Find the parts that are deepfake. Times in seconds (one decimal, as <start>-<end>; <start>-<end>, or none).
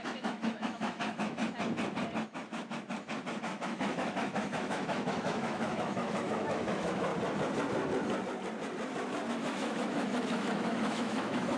0.0-1.4; 3.4-7.1; 9.3-11.6